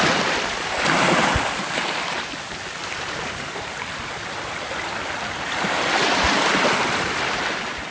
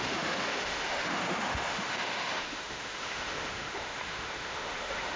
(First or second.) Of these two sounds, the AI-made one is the second